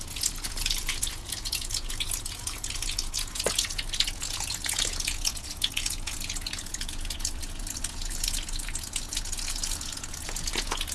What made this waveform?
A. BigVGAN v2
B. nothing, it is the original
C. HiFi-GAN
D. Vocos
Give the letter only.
D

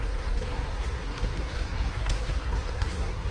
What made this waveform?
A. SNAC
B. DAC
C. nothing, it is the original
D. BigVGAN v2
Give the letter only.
A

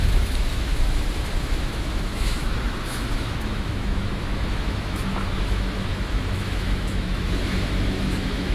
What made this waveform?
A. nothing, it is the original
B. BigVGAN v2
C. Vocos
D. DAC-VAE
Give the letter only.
D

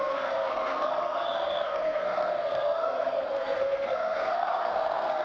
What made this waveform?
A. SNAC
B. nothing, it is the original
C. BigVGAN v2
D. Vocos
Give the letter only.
A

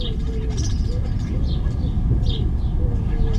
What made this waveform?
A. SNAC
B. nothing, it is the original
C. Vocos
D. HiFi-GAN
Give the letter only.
B